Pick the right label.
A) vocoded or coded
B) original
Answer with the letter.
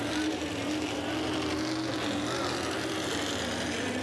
B